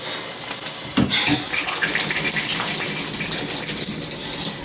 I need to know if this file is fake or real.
real